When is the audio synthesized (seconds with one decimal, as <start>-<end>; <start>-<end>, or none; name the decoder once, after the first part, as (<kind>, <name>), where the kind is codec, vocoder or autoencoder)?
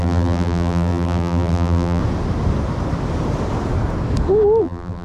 0.0-2.0 (vocoder, BigVGAN v2); 4.6-5.0